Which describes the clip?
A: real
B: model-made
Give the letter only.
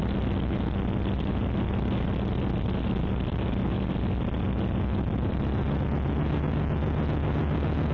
A